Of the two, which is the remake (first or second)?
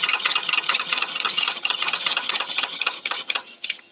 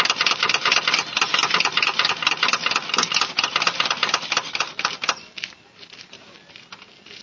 first